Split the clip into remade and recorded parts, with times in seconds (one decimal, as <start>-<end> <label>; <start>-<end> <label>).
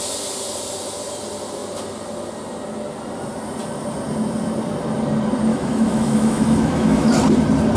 0.0-5.5 recorded; 5.5-7.1 remade; 7.1-7.8 recorded